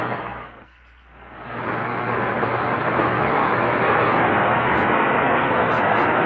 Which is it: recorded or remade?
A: remade